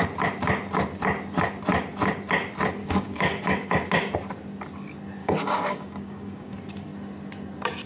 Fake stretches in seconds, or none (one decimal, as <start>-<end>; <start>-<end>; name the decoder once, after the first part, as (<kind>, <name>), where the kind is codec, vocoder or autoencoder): 2.8-3.9 (codec, DAC); 5.2-6.5